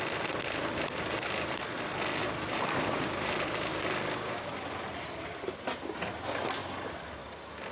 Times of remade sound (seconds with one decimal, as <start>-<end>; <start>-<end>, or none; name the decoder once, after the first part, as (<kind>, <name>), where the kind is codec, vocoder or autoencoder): 2.2-3.3 (vocoder, BigVGAN v2)